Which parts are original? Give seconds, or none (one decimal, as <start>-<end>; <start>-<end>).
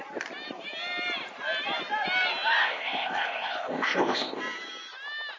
0.0-2.6; 4.4-5.4